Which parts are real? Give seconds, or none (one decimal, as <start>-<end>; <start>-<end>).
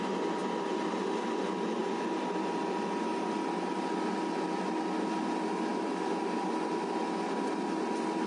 0.0-8.3